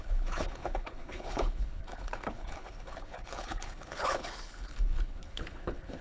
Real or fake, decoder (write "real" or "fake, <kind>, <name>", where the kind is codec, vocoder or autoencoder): fake, codec, HILCodec